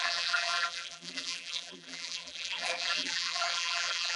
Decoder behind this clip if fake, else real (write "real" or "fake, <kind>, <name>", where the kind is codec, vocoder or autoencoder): fake, vocoder, BigVGAN v2